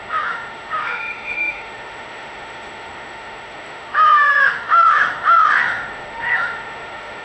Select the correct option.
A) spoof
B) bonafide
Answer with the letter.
A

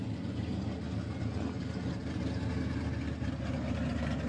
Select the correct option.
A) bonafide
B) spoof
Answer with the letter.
A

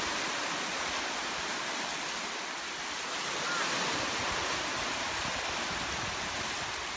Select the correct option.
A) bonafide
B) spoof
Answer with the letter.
A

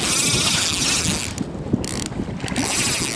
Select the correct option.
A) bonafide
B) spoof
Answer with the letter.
A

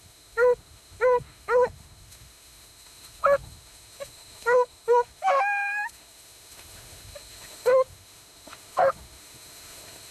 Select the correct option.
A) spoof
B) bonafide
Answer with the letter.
A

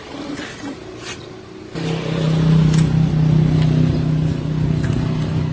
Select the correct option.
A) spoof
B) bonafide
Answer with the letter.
B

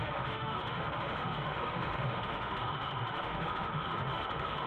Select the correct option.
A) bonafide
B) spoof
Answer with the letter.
B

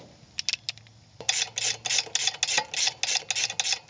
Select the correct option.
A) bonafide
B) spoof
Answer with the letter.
A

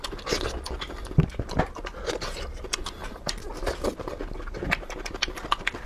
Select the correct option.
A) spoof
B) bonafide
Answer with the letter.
B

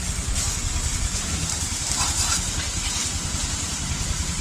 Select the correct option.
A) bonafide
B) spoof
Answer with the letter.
A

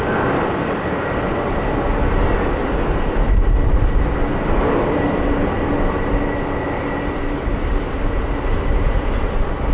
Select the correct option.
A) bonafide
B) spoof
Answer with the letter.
A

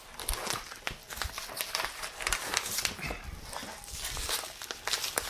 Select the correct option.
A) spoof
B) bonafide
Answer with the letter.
B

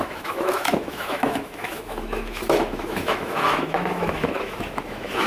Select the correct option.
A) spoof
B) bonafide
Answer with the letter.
A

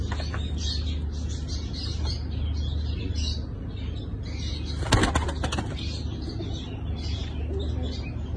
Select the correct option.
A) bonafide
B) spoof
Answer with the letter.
A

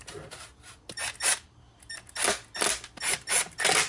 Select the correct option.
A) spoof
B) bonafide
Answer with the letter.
B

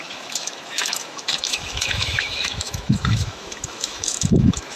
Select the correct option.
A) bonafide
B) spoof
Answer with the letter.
B